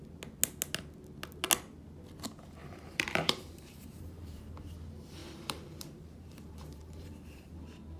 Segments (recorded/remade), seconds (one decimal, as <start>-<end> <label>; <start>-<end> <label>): 0.0-2.6 recorded; 2.6-4.4 remade; 4.4-5.2 recorded; 5.2-7.5 remade; 7.5-8.0 recorded